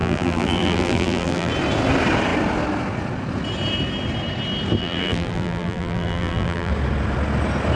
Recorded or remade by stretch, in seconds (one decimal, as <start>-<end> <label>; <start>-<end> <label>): 0.0-1.5 remade; 1.5-4.8 recorded; 4.8-6.7 remade; 6.7-7.8 recorded